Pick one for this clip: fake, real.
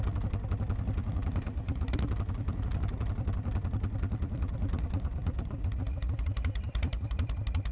fake